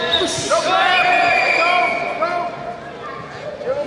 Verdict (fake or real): real